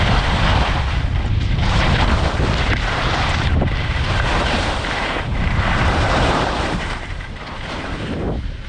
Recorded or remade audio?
remade